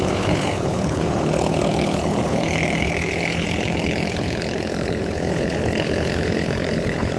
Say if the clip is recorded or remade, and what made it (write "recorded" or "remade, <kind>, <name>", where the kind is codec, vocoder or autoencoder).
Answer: remade, codec, HILCodec